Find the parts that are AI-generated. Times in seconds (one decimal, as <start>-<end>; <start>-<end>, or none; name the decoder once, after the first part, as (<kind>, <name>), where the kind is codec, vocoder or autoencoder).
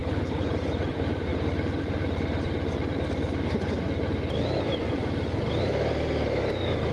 0.0-0.5 (codec, HILCodec)